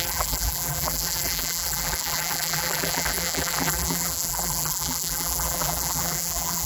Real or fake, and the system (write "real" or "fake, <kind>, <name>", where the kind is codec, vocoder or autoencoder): fake, vocoder, BigVGAN v2